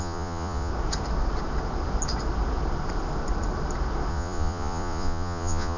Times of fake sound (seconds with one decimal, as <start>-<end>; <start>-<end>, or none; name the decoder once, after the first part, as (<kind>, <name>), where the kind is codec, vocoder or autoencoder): 0.0-0.7 (vocoder, Vocos); 4.1-5.8